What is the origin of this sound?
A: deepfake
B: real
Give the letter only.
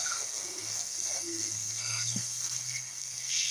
A